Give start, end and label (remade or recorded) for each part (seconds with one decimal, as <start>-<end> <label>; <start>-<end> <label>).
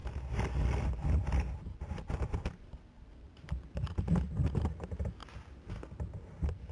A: 0.0-6.7 recorded